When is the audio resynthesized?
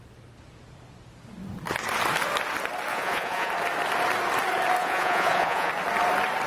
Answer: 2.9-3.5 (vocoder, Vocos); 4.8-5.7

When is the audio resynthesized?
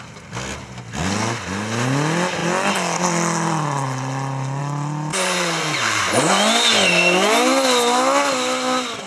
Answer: 5.1-6.0 (vocoder, Vocos)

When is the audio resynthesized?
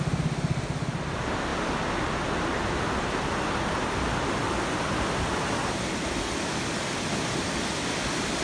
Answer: none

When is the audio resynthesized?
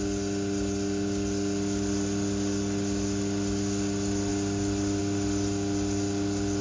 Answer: none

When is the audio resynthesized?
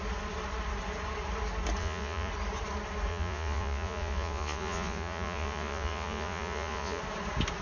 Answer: 1.8-2.3 (vocoder, Vocos); 3.1-7.0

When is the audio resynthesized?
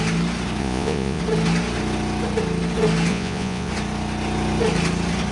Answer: 0.6-1.2 (vocoder, Vocos); 3.1-3.7